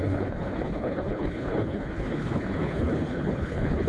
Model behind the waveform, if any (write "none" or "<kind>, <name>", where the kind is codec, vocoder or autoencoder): codec, HILCodec